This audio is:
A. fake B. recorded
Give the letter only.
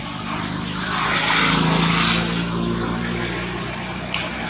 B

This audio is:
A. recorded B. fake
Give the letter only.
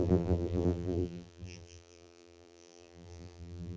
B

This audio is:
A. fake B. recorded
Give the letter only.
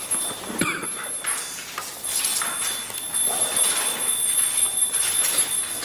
B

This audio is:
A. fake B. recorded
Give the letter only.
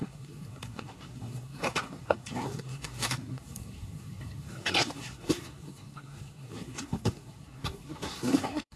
A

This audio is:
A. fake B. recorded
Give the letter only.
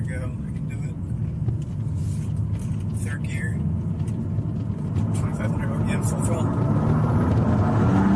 B